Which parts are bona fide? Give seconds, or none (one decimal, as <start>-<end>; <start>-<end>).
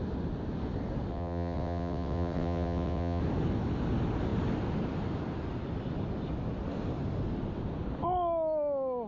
0.0-1.1; 3.2-9.1